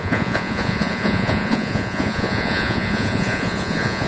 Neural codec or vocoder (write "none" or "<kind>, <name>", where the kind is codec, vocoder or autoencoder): vocoder, Vocos